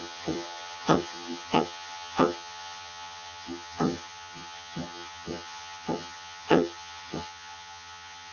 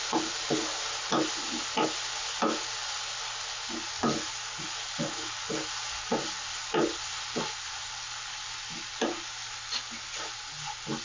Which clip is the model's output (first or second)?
first